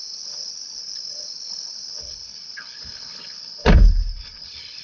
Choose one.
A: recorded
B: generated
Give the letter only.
B